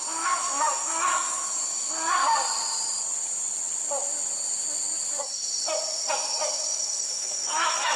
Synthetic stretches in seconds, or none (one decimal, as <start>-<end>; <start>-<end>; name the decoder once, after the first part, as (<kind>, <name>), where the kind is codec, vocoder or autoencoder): 0.0-2.2 (autoencoder, DAC-VAE); 6.1-8.0

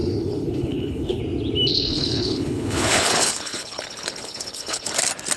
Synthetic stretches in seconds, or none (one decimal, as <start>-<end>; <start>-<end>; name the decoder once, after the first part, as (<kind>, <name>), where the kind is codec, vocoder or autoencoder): 0.0-1.2 (codec, HILCodec); 1.7-4.9